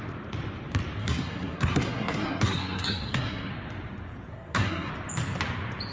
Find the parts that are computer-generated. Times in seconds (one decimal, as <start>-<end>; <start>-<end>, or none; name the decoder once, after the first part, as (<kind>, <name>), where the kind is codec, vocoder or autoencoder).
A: 1.0-3.5 (codec, SNAC); 4.3-4.9